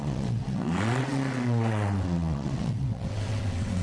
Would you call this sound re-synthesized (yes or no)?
yes